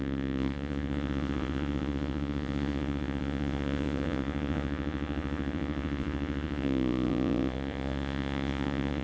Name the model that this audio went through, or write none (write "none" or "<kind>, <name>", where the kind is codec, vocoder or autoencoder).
vocoder, Vocos